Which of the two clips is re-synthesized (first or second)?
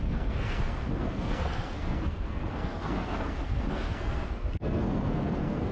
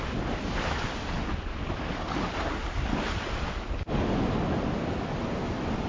first